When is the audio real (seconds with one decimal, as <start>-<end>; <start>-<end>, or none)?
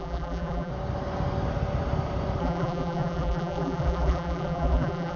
0.7-2.4